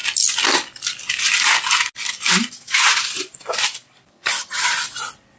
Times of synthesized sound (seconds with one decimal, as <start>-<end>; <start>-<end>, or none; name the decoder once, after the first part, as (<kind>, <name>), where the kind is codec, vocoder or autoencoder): 4.1-4.6 (vocoder, HiFi-GAN)